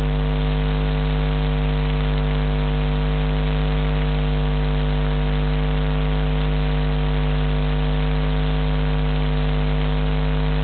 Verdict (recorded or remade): recorded